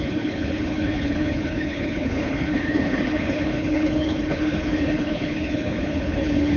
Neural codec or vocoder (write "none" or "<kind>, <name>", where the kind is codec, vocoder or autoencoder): codec, HILCodec